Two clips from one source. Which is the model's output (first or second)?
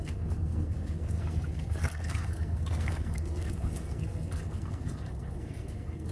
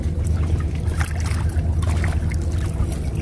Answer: first